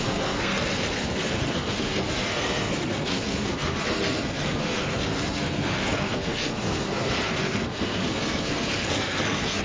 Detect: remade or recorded remade